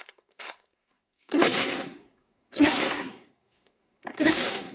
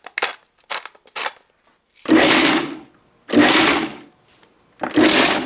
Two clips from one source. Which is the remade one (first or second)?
first